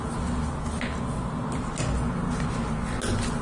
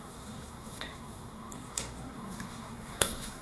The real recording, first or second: first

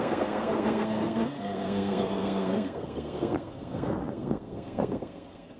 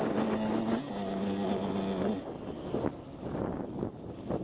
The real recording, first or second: second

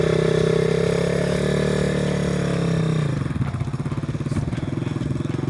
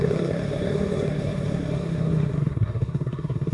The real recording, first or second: first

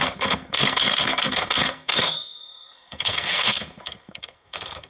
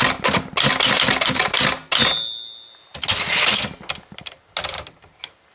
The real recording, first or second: second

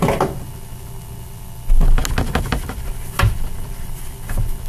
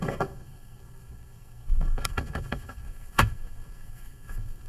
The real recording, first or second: first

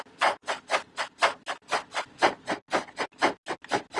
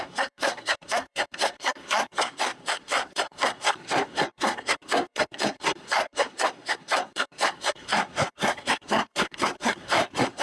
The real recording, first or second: first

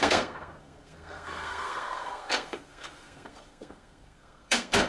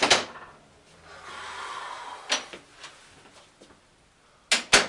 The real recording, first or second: second